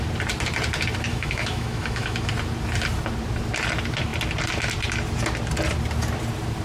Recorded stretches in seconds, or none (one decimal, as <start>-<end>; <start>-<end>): 0.0-1.1; 2.3-6.6